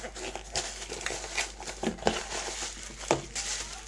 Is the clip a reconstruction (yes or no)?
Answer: no